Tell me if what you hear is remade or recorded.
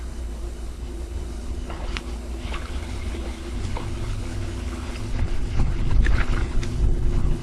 remade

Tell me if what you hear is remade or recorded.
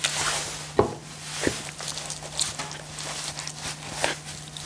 recorded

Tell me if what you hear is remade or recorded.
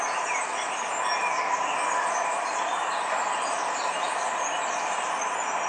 recorded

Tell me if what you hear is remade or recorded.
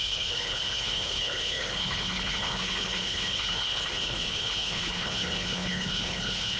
remade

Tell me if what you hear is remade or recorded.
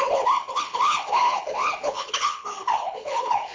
remade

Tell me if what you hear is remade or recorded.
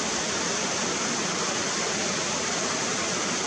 recorded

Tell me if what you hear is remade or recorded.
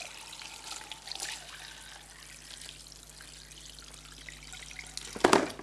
recorded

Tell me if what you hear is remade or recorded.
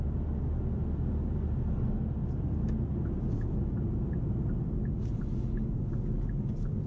recorded